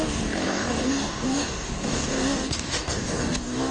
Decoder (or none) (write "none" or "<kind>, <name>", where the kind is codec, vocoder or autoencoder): codec, DAC